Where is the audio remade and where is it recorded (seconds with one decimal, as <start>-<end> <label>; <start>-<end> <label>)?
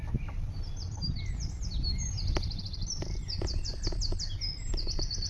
0.0-5.3 recorded